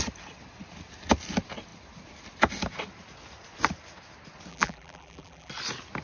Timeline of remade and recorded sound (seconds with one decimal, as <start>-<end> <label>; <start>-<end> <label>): 0.0-4.5 recorded; 4.5-5.5 remade; 5.5-6.0 recorded